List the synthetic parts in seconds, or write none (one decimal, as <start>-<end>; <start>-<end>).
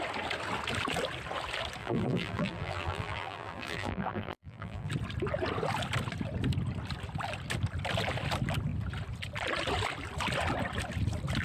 1.8-4.9